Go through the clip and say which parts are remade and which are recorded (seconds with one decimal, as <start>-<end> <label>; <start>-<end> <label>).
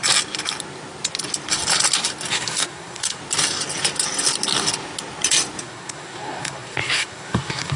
0.0-2.3 recorded; 2.3-3.2 remade; 3.2-5.6 recorded; 5.6-7.8 remade